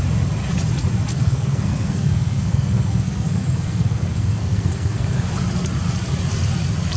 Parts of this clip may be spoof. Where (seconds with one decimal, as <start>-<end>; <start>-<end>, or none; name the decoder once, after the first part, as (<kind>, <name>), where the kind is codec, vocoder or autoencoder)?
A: 1.1-5.3 (codec, SNAC)